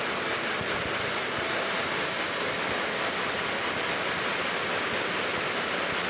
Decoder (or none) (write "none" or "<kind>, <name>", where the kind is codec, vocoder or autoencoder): none